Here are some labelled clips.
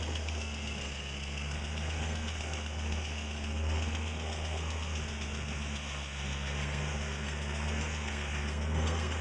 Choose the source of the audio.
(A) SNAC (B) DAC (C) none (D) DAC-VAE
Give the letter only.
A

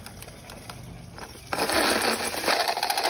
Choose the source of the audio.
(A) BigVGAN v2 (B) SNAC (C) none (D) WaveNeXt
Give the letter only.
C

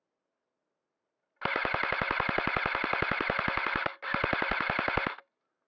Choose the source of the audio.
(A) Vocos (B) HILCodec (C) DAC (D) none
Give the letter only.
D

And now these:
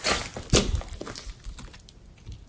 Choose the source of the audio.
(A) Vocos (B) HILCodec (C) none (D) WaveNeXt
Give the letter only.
C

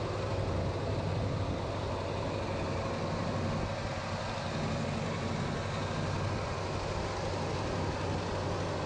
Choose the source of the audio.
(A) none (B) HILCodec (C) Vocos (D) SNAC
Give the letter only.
A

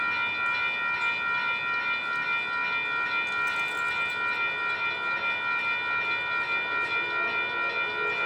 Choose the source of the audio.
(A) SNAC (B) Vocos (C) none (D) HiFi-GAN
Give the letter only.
C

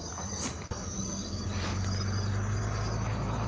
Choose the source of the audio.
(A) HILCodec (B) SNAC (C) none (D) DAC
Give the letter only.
C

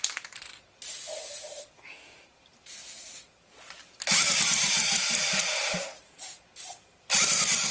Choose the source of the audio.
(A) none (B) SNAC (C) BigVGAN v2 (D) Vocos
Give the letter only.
C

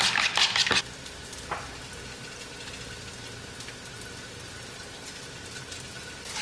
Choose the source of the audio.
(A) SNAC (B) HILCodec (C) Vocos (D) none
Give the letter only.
D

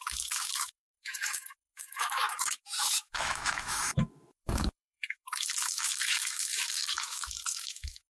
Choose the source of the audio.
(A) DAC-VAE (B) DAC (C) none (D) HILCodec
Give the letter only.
A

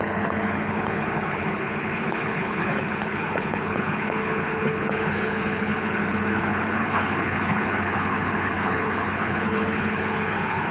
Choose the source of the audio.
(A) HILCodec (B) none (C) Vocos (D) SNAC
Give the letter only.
A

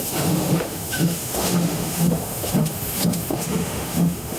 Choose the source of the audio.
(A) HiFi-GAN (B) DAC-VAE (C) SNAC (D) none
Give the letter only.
B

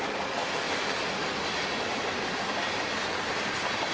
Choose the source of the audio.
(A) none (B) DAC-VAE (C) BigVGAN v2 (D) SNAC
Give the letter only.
A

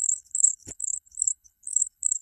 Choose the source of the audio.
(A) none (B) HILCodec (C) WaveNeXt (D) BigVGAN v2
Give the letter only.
B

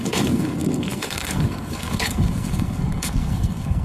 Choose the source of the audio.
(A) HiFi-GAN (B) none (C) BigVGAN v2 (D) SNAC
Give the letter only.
D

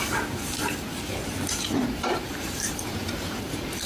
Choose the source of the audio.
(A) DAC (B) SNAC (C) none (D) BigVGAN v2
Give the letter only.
D